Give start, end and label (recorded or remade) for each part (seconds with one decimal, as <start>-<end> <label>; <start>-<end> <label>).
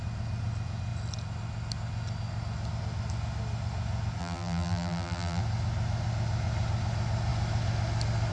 0.0-4.2 recorded; 4.2-5.4 remade; 5.4-8.3 recorded